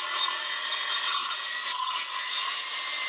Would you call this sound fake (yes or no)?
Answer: no